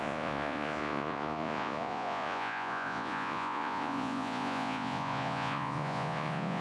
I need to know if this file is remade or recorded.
remade